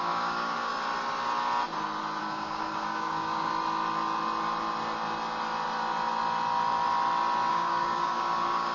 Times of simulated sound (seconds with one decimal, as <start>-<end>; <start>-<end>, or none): 0.0-0.7; 2.2-3.5; 7.5-8.7